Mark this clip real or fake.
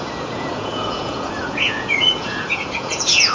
fake